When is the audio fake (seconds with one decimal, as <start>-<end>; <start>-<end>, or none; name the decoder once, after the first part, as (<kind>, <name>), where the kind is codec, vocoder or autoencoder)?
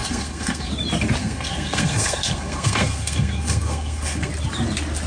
0.0-0.7 (codec, SNAC); 1.2-4.3